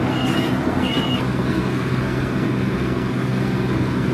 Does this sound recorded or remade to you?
remade